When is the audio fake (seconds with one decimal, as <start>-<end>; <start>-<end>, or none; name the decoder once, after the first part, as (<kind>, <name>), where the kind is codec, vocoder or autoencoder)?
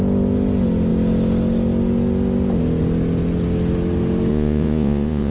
4.3-5.3 (vocoder, Vocos)